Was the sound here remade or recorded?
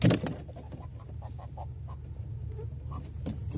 recorded